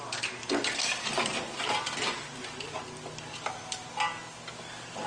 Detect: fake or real real